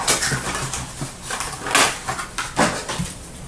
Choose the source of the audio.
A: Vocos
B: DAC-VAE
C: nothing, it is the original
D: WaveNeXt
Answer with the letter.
C